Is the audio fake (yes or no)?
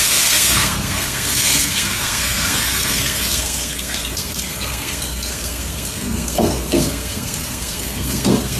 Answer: yes